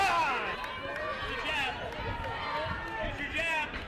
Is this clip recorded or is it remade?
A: recorded